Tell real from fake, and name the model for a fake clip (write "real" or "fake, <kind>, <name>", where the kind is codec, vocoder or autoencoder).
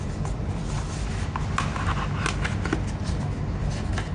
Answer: real